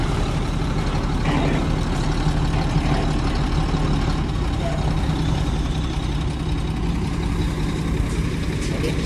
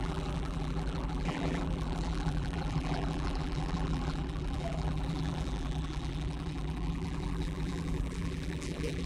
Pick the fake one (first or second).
second